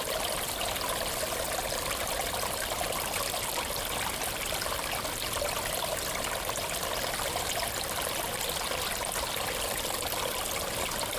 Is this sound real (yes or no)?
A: yes